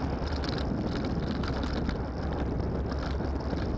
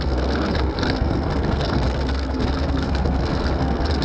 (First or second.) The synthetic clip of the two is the second